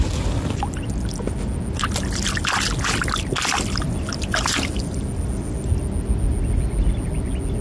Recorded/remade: recorded